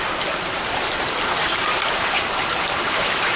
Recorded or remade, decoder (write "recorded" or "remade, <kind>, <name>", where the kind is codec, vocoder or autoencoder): remade, vocoder, BigVGAN v2